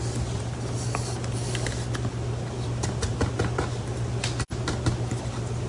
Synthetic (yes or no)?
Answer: no